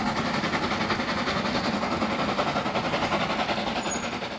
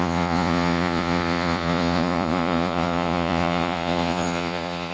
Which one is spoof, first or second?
second